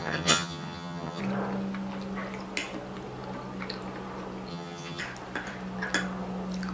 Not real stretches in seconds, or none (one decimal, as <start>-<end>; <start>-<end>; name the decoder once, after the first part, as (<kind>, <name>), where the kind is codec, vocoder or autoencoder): 0.0-1.2 (vocoder, HiFi-GAN); 4.5-5.0